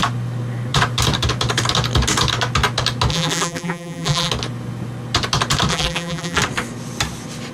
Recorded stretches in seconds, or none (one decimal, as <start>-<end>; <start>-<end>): 0.0-3.1; 4.3-5.7; 6.4-7.5